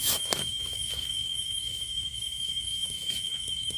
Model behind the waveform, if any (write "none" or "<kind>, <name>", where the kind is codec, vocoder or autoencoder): autoencoder, DAC-VAE